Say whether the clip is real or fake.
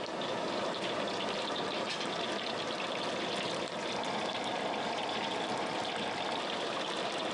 fake